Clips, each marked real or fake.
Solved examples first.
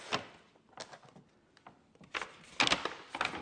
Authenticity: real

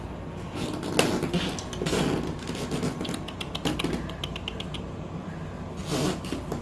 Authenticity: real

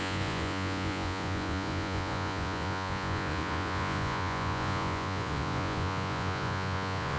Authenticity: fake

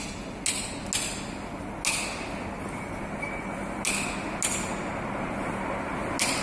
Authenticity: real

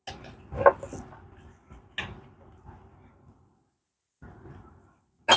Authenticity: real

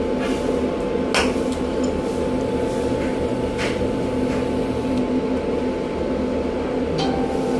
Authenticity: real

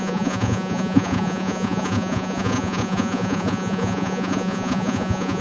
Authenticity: fake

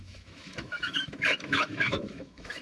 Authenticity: fake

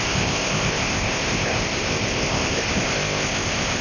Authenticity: fake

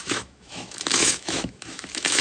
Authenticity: fake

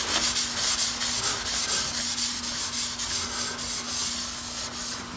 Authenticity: real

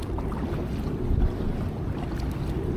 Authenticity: real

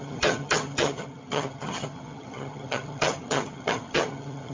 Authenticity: fake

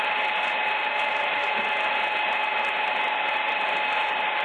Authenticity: real